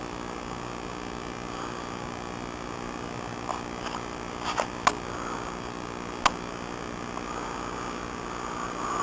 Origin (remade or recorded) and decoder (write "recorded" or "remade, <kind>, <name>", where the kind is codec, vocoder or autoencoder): recorded